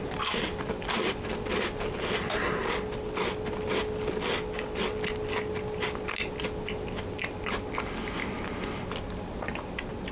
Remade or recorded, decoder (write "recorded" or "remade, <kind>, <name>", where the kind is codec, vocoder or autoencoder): recorded